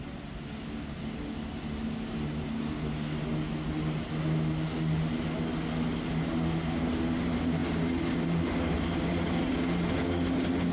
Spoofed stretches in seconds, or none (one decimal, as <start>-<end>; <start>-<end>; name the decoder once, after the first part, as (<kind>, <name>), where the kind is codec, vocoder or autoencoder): none